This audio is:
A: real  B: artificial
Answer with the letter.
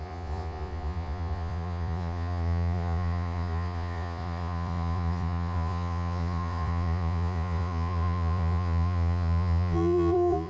B